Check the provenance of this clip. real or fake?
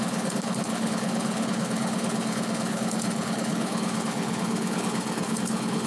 fake